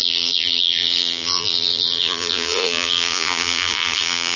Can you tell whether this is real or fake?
fake